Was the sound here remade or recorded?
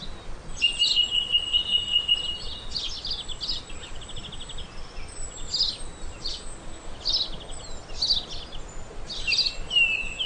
recorded